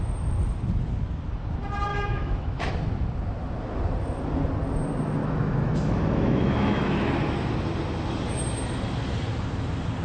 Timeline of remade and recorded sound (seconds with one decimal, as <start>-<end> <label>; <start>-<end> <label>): 0.0-1.9 recorded; 1.9-2.7 remade; 2.7-5.2 recorded; 5.2-7.1 remade; 7.1-10.0 recorded